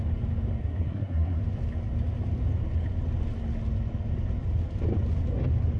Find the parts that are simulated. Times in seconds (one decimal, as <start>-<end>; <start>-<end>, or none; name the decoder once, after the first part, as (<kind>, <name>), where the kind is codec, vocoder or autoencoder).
0.6-1.4 (codec, SNAC)